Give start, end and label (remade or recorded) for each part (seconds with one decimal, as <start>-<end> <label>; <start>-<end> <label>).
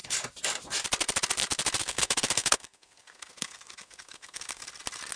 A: 0.0-1.8 recorded; 1.8-4.6 remade; 4.6-5.2 recorded